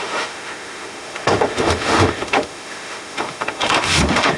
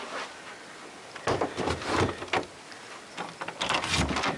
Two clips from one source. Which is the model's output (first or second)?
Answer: first